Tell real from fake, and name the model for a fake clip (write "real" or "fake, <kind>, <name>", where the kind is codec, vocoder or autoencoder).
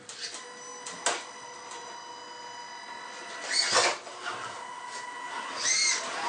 real